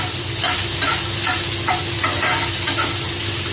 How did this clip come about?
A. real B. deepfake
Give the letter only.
A